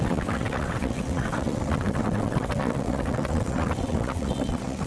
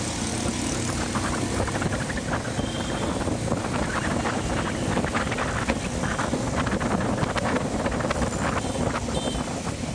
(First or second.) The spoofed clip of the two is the first